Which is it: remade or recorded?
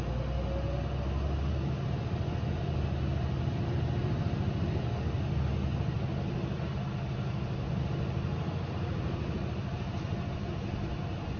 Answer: recorded